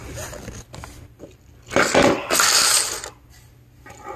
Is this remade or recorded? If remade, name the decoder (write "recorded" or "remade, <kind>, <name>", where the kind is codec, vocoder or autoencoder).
recorded